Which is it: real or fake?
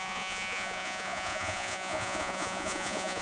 fake